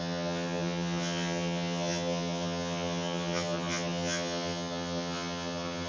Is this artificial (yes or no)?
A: yes